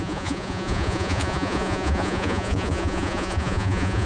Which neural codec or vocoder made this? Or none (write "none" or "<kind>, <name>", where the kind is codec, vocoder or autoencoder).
vocoder, Vocos